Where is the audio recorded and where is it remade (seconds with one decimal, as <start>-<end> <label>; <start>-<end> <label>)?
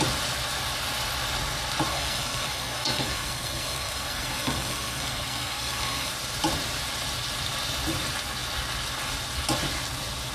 0.0-1.9 recorded; 1.9-6.1 remade; 6.1-10.3 recorded